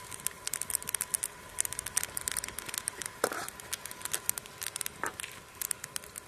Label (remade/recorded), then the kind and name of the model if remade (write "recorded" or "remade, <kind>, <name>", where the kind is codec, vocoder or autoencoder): recorded